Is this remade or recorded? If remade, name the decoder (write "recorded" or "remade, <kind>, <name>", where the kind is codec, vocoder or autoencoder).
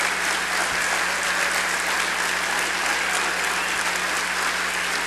recorded